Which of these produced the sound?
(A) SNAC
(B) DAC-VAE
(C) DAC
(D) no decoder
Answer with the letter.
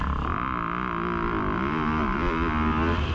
D